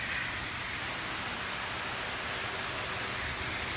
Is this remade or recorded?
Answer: recorded